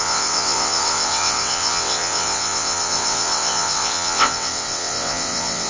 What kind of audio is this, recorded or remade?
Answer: remade